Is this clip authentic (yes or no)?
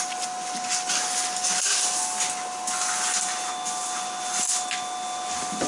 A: yes